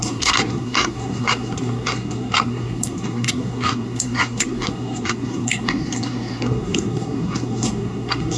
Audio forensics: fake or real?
fake